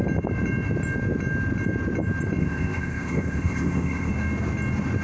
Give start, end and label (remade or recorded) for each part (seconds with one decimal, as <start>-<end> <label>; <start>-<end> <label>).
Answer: 0.0-2.4 recorded; 2.4-4.1 remade; 4.1-5.0 recorded